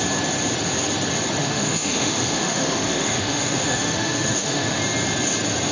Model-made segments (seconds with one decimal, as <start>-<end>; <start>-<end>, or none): 1.4-4.8